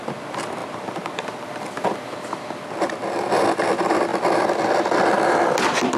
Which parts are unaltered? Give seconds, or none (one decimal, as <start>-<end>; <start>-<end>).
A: 0.0-6.0